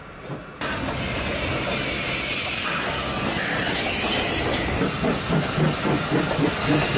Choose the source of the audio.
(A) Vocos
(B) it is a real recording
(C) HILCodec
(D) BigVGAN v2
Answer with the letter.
B